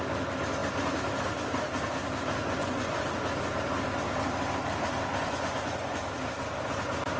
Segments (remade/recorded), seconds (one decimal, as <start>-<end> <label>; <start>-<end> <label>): 0.0-2.6 recorded; 2.6-3.2 remade; 3.2-5.2 recorded; 5.2-6.0 remade; 6.0-7.2 recorded